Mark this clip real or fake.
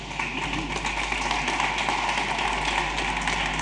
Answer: real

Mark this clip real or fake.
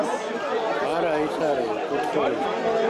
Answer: real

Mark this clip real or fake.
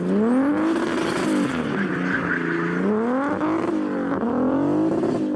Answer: real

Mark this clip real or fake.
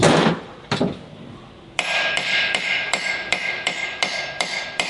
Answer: fake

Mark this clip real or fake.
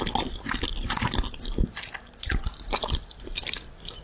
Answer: real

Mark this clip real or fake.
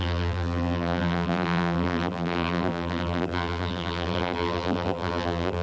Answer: fake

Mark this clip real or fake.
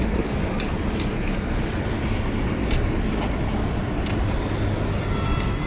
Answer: real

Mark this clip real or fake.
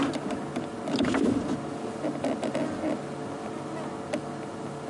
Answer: real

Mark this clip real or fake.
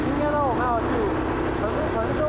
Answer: real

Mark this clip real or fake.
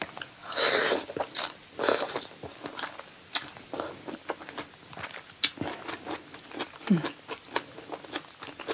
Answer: real